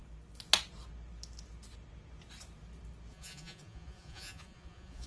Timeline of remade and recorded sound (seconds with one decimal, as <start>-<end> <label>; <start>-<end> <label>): 0.0-3.1 recorded; 3.1-5.1 remade

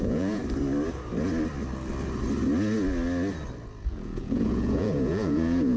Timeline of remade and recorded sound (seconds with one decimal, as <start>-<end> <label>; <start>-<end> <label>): 0.0-0.4 remade; 0.4-3.9 recorded; 3.9-5.8 remade

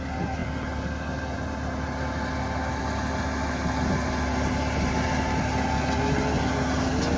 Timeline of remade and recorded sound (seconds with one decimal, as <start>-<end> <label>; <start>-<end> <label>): 0.0-7.2 recorded

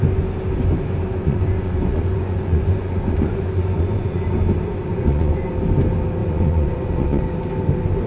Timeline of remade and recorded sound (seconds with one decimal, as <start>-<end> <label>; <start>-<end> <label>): 0.0-1.1 recorded; 1.1-4.2 remade; 4.2-4.9 recorded; 4.9-5.5 remade; 5.5-6.2 recorded; 6.2-7.2 remade; 7.2-8.1 recorded

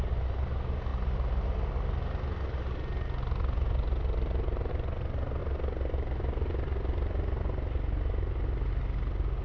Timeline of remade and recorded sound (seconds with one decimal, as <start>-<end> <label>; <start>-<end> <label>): 0.0-9.4 recorded